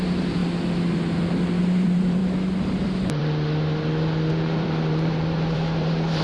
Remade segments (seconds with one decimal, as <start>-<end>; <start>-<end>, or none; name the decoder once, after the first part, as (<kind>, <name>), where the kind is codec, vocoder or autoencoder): 0.0-0.4 (vocoder, BigVGAN v2); 1.6-2.2; 2.8-3.2; 4.3-6.2